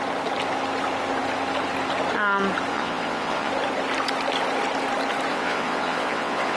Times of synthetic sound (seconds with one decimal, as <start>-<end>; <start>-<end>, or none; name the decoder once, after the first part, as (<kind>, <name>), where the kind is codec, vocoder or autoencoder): 2.7-3.5 (vocoder, WaveNeXt); 5.3-6.6